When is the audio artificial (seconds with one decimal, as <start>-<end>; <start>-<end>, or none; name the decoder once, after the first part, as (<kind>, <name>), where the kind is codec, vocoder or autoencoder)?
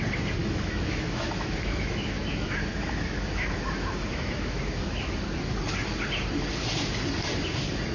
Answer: 0.4-5.1 (autoencoder, DAC-VAE)